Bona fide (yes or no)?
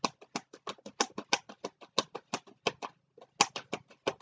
yes